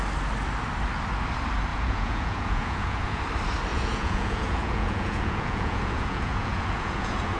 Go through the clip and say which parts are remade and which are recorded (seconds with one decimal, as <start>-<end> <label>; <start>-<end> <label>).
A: 0.0-1.7 recorded; 1.7-3.2 remade; 3.2-3.7 recorded; 3.7-7.4 remade